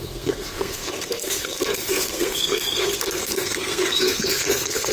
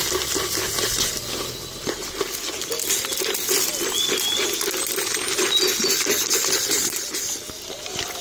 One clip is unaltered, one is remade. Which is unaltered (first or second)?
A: second